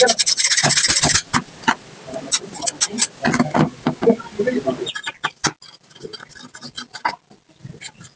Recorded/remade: recorded